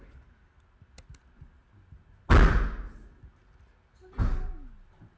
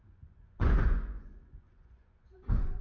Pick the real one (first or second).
first